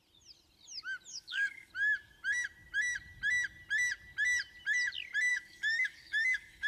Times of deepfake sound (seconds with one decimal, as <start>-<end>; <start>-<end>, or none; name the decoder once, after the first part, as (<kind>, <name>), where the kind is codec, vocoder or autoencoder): 1.1-1.7 (codec, DAC); 5.3-6.7